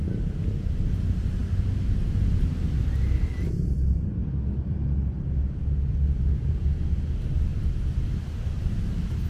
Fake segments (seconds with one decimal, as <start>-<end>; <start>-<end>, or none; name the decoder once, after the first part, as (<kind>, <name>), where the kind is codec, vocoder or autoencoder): none